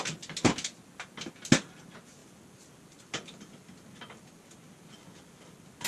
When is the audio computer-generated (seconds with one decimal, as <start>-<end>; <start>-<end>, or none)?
none